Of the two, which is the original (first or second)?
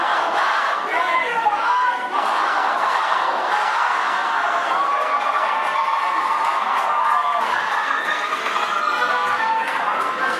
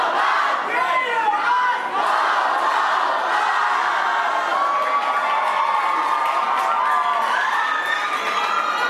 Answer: second